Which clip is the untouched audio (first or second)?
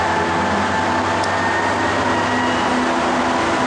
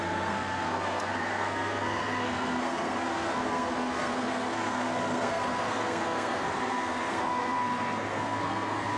first